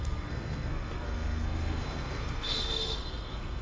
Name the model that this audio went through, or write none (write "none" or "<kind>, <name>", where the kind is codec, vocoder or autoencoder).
codec, SNAC